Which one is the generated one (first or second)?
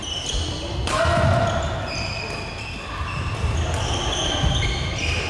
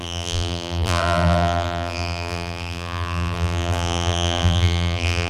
second